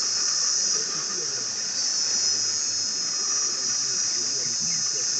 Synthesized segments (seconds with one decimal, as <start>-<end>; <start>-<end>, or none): 0.0-1.9